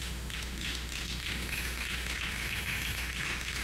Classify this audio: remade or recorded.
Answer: remade